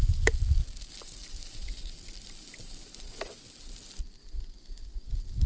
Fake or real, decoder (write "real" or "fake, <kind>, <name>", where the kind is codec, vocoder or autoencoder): real